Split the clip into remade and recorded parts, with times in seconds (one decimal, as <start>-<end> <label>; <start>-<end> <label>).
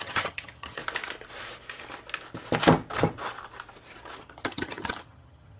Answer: 0.0-0.8 remade; 0.8-4.2 recorded; 4.2-5.6 remade